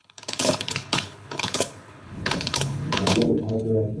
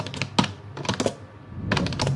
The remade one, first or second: first